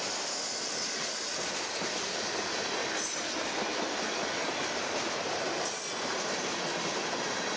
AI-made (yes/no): no